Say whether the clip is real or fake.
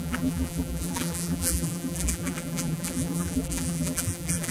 fake